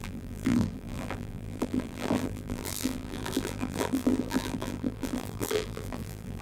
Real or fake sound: fake